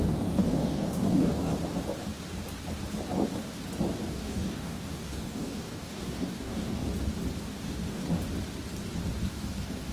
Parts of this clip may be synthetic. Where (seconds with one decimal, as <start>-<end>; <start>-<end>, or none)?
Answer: 0.0-1.5; 4.1-6.8; 7.4-8.0; 9.3-9.9